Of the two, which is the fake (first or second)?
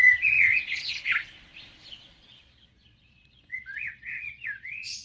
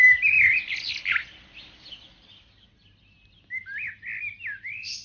first